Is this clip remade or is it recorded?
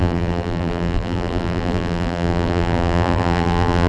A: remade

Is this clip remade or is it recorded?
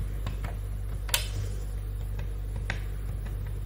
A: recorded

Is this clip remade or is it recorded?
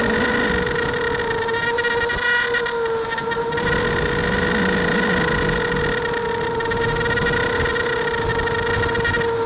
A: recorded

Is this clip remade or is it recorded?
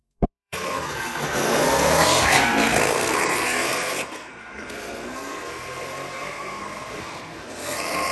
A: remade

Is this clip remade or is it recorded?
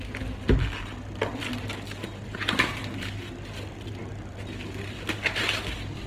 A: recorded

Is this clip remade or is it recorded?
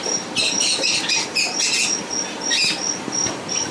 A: recorded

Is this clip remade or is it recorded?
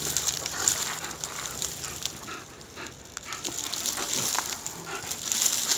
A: recorded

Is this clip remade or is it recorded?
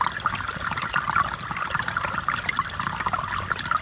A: recorded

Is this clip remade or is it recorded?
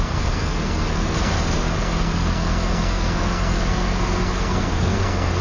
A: remade